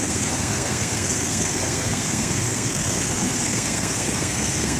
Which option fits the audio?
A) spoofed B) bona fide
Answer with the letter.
A